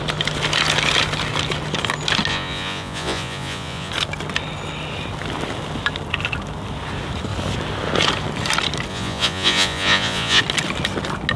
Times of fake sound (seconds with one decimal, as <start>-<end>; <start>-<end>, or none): 2.3-3.9; 8.9-10.4